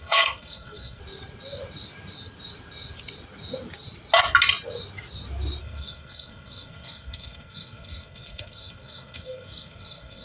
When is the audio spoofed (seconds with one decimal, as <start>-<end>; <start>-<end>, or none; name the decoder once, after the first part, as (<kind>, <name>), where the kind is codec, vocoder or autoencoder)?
0.0-1.0 (codec, SNAC); 5.6-10.2

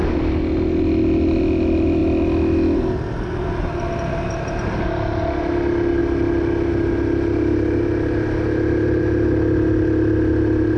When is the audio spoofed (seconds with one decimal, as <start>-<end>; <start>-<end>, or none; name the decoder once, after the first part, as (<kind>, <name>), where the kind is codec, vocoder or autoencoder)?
none

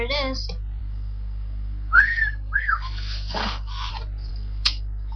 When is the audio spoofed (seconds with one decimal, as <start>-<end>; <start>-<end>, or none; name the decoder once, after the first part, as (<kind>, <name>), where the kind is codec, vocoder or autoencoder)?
0.8-3.9 (codec, SNAC); 4.3-5.2

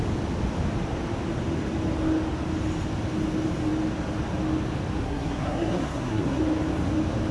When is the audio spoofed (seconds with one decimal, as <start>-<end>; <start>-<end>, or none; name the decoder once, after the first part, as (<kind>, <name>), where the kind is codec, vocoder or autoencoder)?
5.0-6.4 (codec, SNAC)

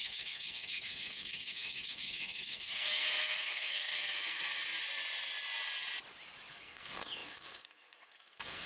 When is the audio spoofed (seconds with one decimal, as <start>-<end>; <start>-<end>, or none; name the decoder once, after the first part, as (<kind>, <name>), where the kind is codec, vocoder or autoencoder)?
0.0-4.5 (codec, SNAC); 6.5-8.7

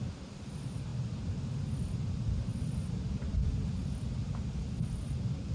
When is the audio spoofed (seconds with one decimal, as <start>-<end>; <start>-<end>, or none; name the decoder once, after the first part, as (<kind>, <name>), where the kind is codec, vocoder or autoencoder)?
none

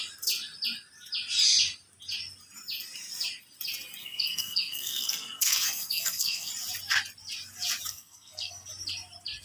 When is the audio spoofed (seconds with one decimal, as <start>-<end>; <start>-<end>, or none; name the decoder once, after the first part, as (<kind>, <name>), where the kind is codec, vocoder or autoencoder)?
4.0-6.5 (codec, SNAC); 7.9-8.7

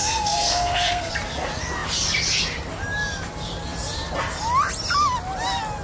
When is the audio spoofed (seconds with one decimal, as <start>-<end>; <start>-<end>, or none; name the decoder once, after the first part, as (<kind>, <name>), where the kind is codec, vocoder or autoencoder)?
0.0-1.1 (codec, SNAC)